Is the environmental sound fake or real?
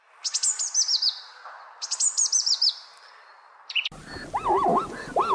real